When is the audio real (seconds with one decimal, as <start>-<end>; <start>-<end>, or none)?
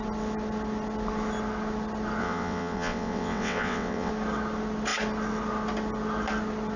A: 0.0-2.2; 4.1-6.8